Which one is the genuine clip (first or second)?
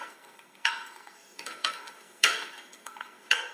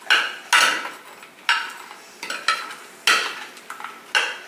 second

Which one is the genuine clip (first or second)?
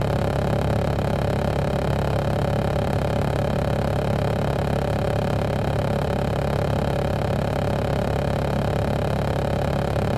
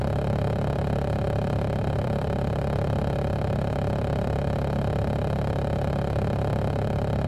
first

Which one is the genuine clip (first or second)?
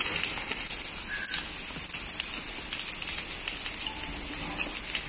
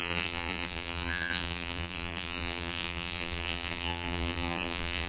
first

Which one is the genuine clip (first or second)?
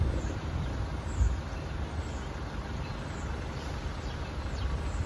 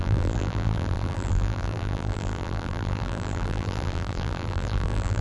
first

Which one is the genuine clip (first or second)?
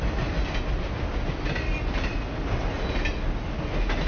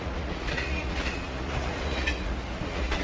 first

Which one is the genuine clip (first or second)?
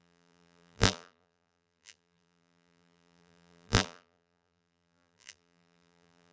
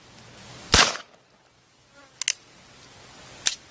second